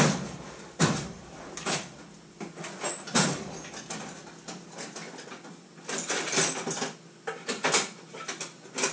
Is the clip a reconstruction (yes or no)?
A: no